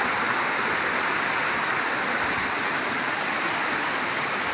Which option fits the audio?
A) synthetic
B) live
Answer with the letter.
B